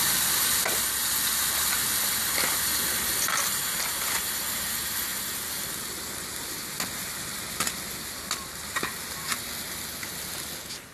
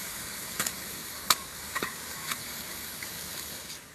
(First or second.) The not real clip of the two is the second